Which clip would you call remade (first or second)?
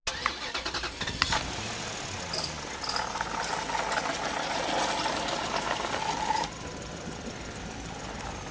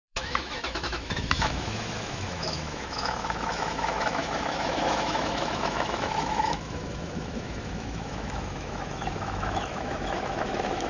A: second